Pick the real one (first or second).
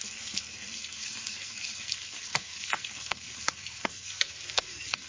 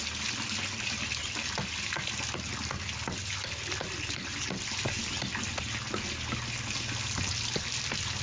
second